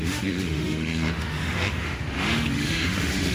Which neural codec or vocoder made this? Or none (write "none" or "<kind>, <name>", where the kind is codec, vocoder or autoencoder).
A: autoencoder, DAC-VAE